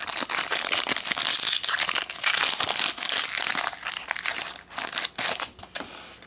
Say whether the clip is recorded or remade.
recorded